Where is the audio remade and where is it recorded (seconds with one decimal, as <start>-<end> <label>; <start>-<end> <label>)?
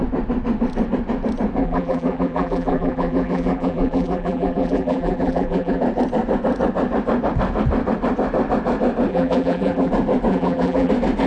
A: 0.0-1.6 recorded; 1.6-5.8 remade; 5.8-9.1 recorded; 9.1-9.9 remade; 9.9-10.3 recorded; 10.3-10.9 remade; 10.9-11.3 recorded